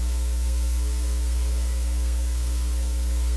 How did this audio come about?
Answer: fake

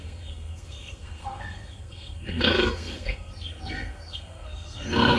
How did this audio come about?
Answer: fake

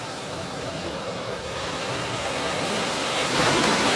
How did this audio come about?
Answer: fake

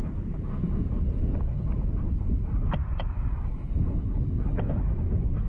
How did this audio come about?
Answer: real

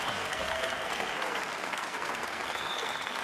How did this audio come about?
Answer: fake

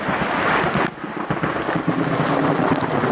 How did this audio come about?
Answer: real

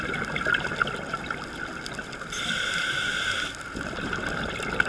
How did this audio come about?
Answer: real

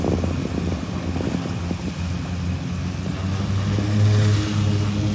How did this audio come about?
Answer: real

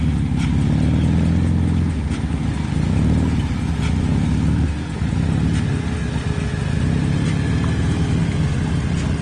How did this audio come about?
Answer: real